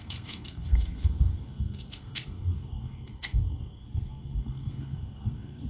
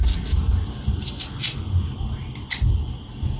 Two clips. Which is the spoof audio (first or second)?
first